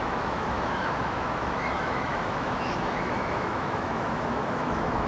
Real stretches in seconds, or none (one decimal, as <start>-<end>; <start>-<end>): none